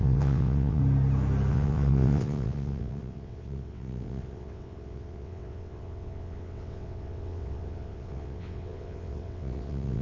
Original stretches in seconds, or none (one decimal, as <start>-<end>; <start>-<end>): 0.8-1.5